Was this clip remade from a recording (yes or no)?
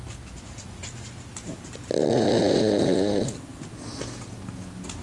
no